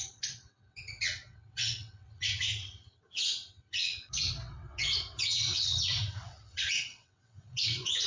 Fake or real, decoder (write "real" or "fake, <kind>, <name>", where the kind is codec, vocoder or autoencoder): fake, vocoder, WaveNeXt